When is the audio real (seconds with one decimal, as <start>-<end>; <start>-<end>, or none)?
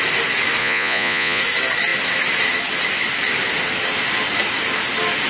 0.0-0.6; 1.4-5.3